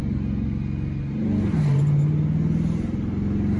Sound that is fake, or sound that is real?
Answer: real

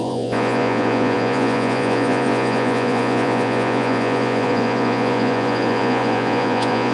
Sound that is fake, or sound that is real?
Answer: fake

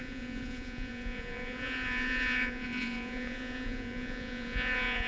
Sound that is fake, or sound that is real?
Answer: fake